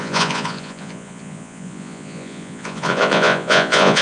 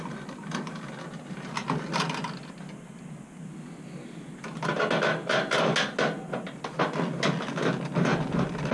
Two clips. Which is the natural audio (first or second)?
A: second